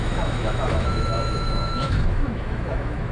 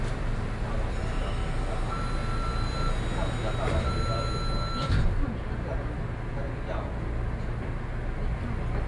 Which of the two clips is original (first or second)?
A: second